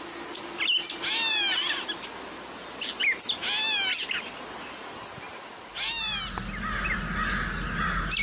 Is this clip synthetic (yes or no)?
no